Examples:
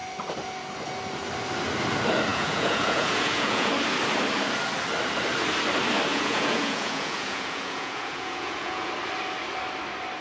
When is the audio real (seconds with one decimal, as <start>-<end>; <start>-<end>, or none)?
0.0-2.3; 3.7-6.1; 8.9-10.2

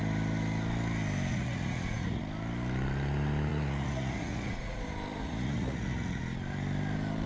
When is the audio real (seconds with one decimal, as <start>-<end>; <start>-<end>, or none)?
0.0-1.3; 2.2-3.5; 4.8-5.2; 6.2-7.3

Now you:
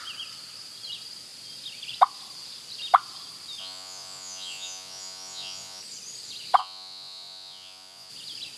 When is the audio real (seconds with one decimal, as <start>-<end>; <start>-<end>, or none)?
0.0-3.6; 5.8-6.6; 8.1-8.6

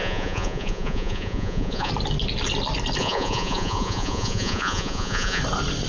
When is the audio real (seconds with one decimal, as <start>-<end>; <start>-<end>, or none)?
1.9-3.0; 5.4-5.9

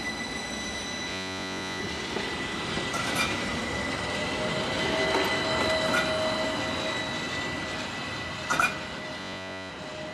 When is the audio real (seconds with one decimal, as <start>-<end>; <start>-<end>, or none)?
0.0-1.1; 1.8-9.2; 9.7-10.1

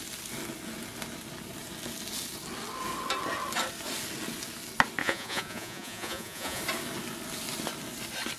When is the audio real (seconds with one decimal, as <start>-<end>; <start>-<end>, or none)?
0.0-5.0; 6.6-8.4

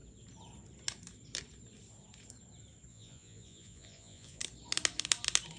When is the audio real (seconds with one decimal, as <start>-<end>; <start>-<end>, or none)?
0.0-2.9; 4.4-5.6